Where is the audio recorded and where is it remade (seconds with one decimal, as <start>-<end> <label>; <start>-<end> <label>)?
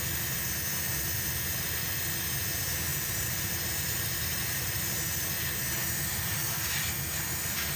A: 0.0-2.9 recorded; 2.9-4.8 remade; 4.8-6.4 recorded; 6.4-6.9 remade; 6.9-7.8 recorded